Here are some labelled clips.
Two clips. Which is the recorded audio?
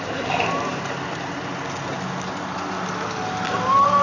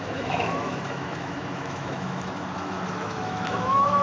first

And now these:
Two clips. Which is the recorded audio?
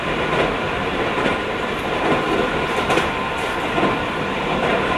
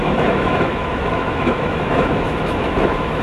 first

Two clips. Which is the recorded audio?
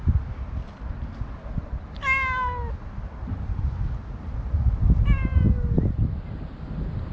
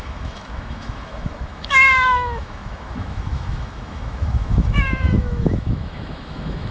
first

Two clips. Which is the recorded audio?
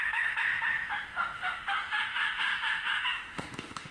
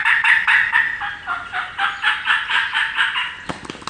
second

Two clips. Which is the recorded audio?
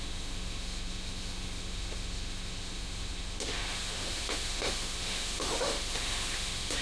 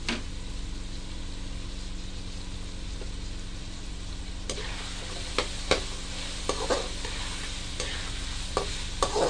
second